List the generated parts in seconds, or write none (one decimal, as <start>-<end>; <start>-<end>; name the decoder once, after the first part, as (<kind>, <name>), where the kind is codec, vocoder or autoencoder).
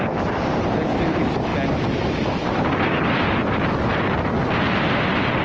none